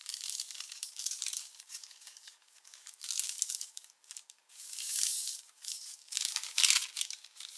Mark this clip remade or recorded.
remade